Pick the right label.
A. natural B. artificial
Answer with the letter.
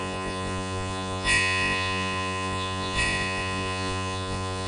B